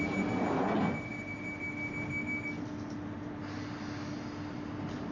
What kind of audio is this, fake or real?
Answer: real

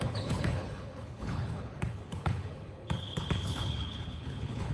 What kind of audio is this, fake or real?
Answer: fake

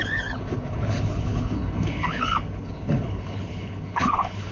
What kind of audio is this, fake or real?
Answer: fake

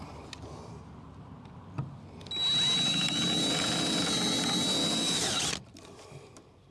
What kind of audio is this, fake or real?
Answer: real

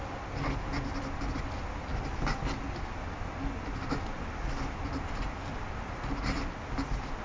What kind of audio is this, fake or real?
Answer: real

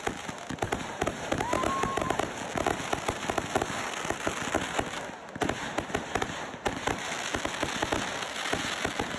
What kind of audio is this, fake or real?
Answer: real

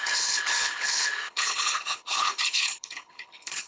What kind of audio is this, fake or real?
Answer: fake